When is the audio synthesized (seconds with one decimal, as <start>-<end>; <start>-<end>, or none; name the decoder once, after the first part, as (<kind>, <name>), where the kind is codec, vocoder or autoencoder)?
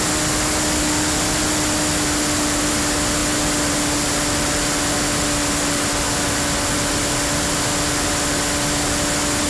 none